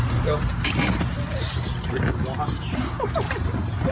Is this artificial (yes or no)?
no